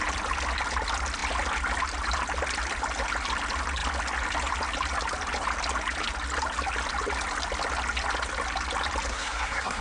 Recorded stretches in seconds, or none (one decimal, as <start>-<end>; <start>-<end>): 0.0-9.1